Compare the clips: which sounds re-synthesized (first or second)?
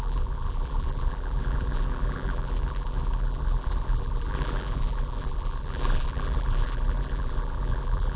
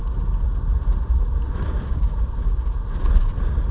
first